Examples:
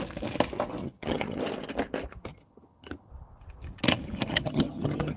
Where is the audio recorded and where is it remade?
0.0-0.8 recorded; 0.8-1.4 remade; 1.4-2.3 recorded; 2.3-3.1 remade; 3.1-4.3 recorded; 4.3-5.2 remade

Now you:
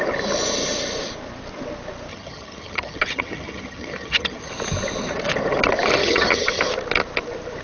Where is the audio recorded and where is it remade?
0.0-2.1 recorded; 2.1-4.5 remade; 4.5-6.0 recorded; 6.0-6.6 remade; 6.6-7.6 recorded